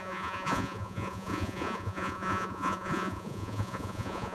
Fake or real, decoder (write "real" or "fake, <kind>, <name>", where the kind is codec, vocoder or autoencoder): fake, vocoder, Vocos